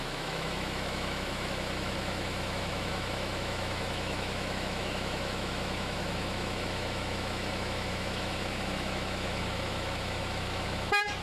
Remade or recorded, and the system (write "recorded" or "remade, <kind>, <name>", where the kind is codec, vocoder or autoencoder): remade, autoencoder, DAC-VAE